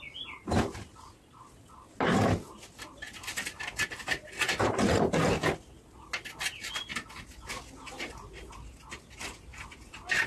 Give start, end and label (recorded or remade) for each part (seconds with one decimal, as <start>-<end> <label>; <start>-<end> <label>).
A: 0.0-10.3 recorded